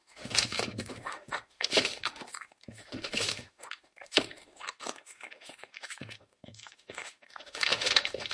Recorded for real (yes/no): no